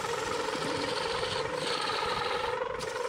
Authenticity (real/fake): real